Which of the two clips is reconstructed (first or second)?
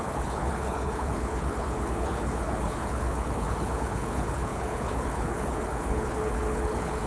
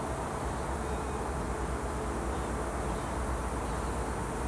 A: first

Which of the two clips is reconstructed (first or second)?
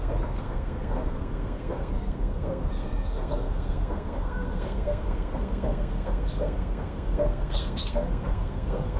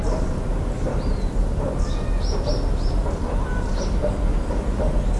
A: first